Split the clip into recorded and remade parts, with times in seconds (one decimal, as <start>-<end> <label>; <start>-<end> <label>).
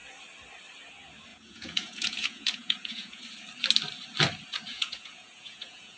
0.0-1.3 recorded; 1.3-3.2 remade; 3.2-4.7 recorded; 4.7-6.0 remade